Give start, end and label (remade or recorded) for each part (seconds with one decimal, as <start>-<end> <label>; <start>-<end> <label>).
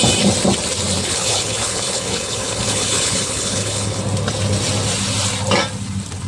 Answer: 0.0-1.0 recorded; 1.0-4.0 remade; 4.0-6.3 recorded